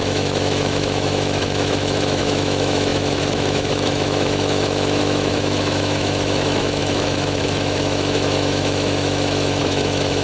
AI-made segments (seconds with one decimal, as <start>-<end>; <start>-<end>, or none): 0.0-10.2